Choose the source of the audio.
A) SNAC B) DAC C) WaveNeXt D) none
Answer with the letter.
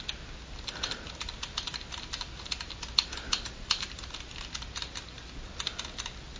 D